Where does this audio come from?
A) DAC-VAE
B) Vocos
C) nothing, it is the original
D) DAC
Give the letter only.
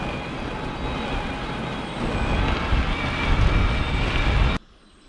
C